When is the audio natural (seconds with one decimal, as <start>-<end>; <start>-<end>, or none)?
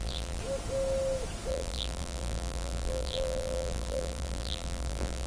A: 0.4-1.5